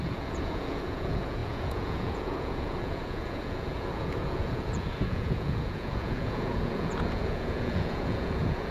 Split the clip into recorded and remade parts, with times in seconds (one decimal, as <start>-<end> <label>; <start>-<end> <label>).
0.0-8.7 remade